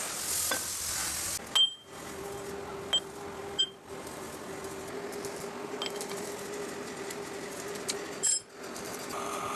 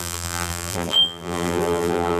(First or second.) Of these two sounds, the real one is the first